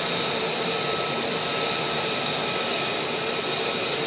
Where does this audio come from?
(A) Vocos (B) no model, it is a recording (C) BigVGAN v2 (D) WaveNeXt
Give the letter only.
B